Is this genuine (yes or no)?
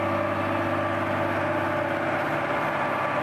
yes